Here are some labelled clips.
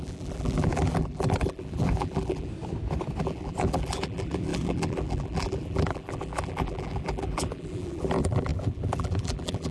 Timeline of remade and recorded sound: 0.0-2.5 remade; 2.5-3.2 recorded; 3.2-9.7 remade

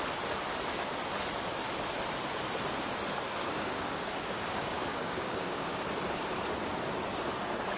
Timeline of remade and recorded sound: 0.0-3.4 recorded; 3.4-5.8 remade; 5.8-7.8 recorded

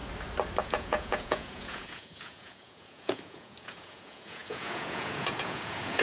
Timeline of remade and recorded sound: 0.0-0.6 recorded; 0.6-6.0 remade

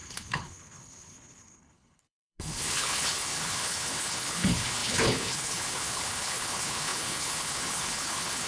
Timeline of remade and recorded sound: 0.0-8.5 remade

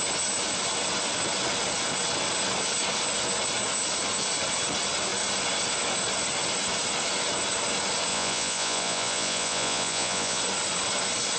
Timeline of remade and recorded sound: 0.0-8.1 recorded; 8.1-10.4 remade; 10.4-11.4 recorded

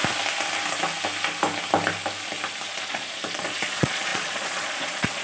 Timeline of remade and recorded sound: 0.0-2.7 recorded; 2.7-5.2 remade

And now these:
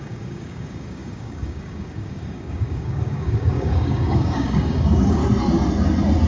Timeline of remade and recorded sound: 0.0-5.2 remade; 5.2-6.3 recorded

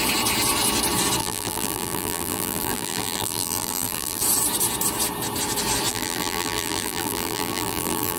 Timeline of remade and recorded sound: 0.0-1.2 recorded; 1.2-4.2 remade; 4.2-5.9 recorded; 5.9-8.2 remade